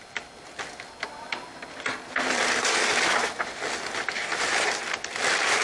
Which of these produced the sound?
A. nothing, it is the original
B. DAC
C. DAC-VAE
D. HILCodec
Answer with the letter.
A